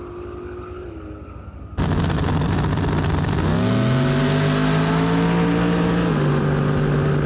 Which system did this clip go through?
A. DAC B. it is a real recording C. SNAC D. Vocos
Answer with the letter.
B